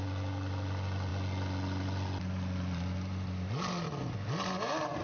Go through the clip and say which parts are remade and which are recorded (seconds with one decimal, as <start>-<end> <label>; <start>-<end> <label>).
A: 0.0-5.0 recorded